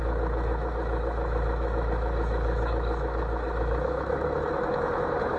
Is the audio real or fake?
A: fake